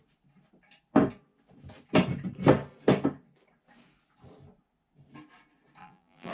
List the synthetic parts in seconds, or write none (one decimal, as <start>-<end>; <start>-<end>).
5.8-6.3